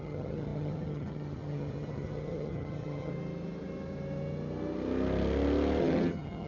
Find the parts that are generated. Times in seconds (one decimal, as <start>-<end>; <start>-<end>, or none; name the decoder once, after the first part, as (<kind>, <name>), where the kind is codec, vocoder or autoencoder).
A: 0.0-3.1 (vocoder, HiFi-GAN); 5.8-6.5